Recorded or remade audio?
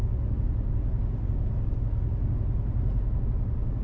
recorded